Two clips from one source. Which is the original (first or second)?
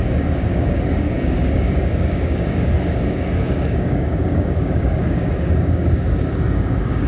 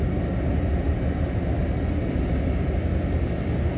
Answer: second